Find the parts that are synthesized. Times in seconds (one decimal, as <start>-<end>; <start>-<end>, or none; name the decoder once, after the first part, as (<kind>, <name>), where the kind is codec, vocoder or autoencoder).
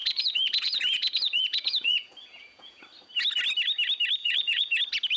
0.0-2.8 (vocoder, Vocos); 4.2-4.8